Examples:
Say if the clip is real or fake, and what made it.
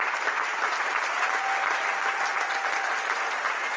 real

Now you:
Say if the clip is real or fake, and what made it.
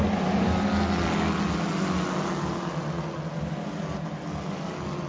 real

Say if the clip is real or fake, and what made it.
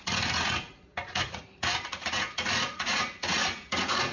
fake, vocoder, Vocos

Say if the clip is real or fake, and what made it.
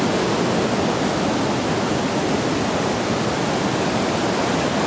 real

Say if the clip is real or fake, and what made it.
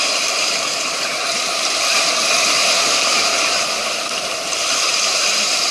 fake, vocoder, BigVGAN v2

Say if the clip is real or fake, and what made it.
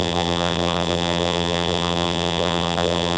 fake, vocoder, BigVGAN v2